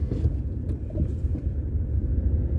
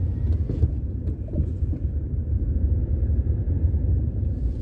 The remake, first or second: second